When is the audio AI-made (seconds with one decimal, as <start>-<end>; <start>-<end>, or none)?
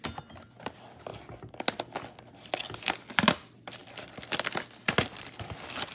none